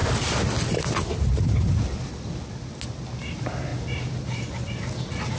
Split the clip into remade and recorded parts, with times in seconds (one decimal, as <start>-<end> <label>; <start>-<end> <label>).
0.0-5.4 recorded